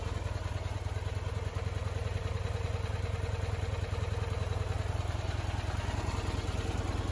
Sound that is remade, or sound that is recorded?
recorded